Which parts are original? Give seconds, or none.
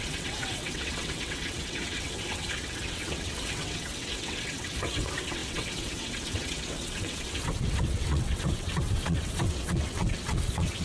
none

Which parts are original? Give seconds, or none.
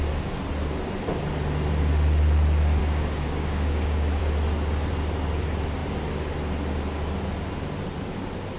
0.0-2.8; 4.2-8.6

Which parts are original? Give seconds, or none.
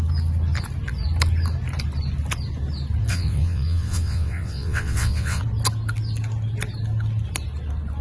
0.0-3.1; 5.4-8.0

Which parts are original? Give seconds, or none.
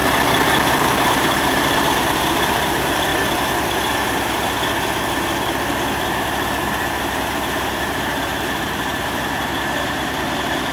0.0-0.8; 3.1-7.0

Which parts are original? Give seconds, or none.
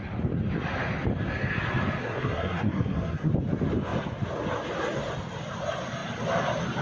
0.0-2.0; 3.3-6.8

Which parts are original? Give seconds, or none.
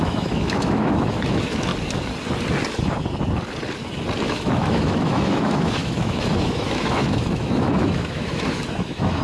1.7-4.2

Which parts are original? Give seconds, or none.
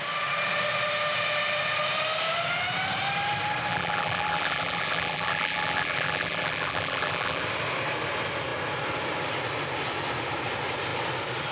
0.0-3.7; 7.4-11.5